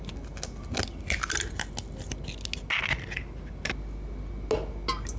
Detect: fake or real real